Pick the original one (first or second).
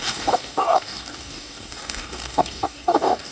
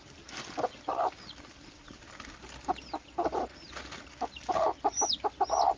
second